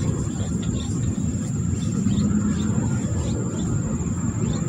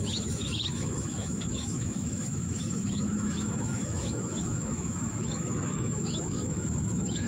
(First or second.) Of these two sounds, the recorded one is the first